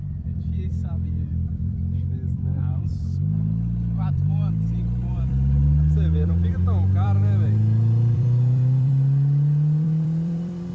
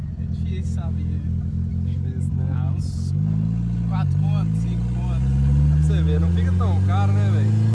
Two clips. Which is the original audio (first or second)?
second